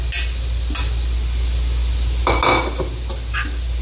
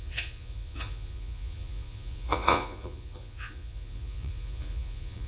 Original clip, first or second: first